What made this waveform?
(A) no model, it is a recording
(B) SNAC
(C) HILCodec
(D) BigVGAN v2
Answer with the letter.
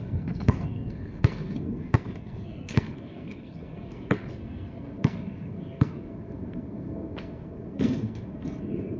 B